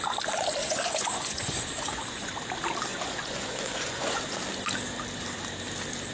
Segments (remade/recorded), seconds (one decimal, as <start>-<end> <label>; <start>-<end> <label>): 0.0-0.6 recorded; 0.6-2.3 remade; 2.3-2.9 recorded; 2.9-4.2 remade; 4.2-6.1 recorded